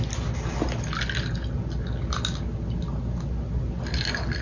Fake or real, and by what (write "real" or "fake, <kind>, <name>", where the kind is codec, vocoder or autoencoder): real